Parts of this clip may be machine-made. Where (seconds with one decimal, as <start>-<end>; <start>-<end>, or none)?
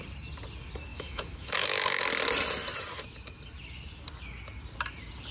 0.9-2.0